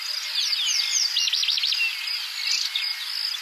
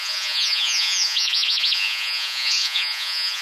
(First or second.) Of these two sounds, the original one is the first